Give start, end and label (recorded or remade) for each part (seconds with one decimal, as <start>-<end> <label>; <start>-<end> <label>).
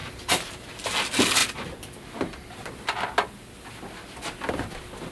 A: 0.0-0.9 remade; 0.9-5.1 recorded